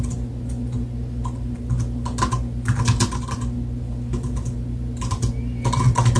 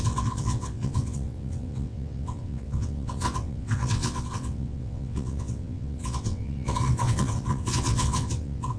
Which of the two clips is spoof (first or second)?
second